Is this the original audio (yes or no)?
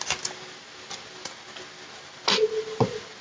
yes